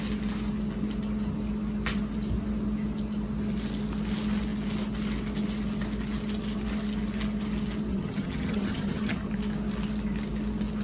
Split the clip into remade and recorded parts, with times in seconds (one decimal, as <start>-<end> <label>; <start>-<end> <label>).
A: 0.0-7.9 recorded; 7.9-9.3 remade; 9.3-10.8 recorded